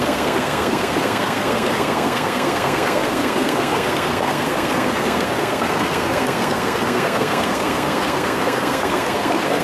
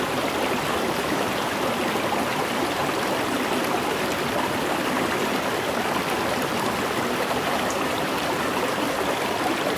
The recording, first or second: second